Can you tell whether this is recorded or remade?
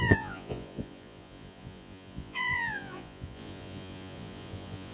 remade